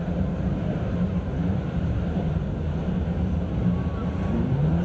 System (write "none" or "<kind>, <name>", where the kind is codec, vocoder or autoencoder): none